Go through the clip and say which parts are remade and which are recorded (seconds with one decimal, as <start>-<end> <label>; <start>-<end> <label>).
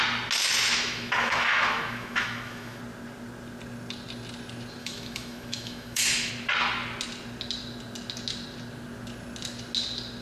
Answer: 0.0-0.4 recorded; 0.4-2.8 remade; 2.8-4.8 recorded; 4.8-6.3 remade; 6.3-10.2 recorded